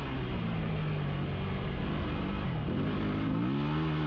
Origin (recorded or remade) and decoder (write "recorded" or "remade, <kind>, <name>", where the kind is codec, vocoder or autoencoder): recorded